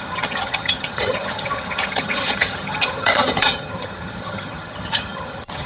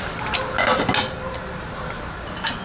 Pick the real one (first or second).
second